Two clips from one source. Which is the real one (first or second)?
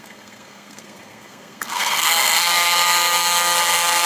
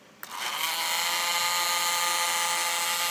second